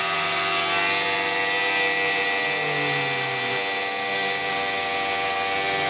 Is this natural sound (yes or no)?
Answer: yes